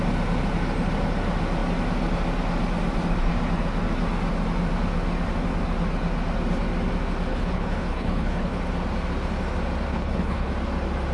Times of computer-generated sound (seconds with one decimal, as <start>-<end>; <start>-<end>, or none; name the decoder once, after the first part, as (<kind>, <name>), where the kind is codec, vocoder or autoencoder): 7.3-8.6 (codec, HILCodec); 9.9-10.5